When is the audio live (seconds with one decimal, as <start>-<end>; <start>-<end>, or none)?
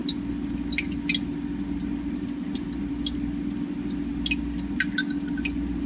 0.0-5.9